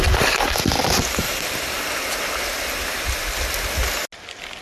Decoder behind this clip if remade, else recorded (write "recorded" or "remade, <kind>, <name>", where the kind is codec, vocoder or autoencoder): recorded